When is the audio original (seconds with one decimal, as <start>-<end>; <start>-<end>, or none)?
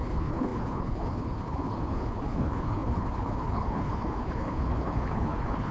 none